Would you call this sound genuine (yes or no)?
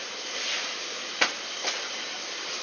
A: yes